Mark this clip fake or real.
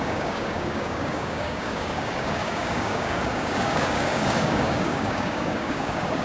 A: fake